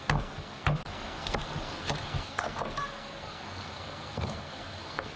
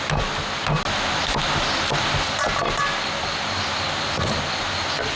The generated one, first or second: first